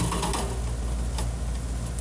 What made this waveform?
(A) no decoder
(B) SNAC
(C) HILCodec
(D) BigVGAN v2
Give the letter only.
A